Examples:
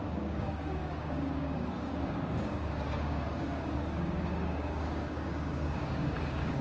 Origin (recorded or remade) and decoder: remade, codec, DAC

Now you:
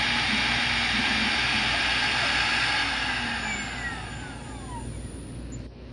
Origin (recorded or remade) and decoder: recorded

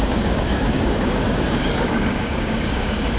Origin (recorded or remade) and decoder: remade, codec, DAC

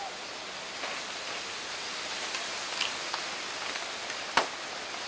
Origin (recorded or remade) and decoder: recorded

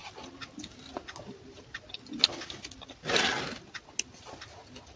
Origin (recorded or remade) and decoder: recorded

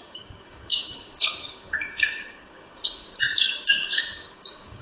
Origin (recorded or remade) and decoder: remade, codec, DAC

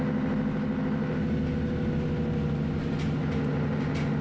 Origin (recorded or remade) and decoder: recorded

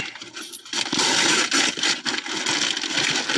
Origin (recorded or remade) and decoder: recorded